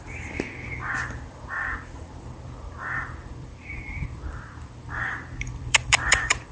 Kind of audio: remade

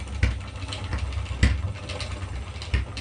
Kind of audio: recorded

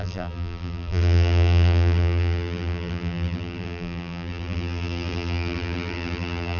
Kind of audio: remade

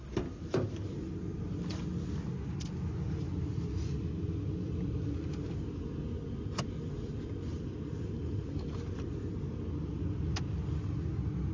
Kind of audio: recorded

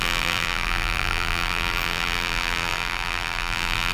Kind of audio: remade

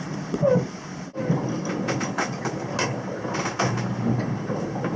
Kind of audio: recorded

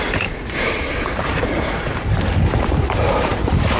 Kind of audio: remade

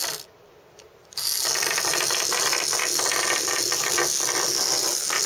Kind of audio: recorded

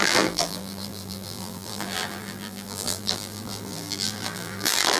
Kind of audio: remade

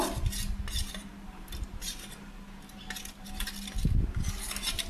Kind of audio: recorded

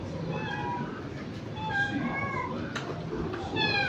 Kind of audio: recorded